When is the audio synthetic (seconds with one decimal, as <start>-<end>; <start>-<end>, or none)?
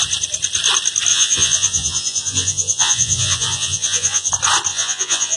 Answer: 1.1-4.3; 4.7-5.4